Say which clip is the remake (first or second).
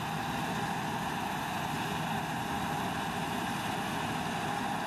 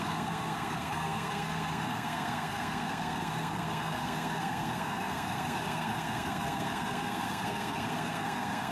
second